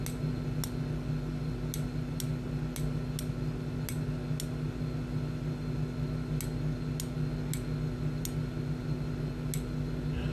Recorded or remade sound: recorded